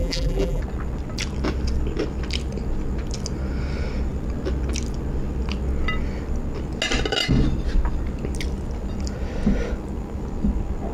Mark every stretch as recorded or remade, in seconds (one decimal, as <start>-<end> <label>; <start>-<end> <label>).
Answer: 0.0-0.6 remade; 0.6-10.9 recorded